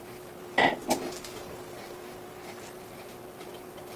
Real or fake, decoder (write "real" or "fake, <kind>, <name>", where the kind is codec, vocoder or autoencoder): real